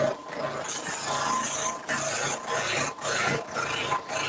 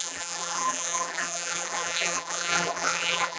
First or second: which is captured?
first